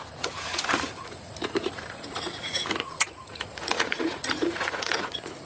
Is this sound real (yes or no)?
no